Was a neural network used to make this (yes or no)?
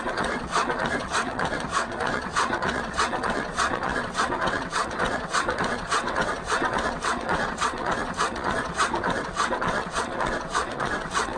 yes